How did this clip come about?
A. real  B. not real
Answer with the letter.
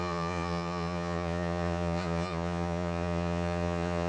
B